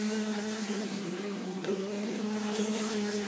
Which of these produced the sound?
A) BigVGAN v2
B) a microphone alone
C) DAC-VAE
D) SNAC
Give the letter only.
D